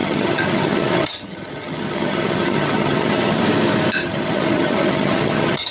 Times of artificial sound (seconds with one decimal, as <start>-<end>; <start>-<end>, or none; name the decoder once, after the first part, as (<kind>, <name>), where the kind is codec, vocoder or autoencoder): 0.0-3.4 (vocoder, HiFi-GAN); 4.0-5.7